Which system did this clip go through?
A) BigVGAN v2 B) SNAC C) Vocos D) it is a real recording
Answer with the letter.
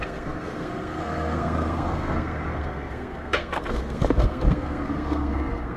B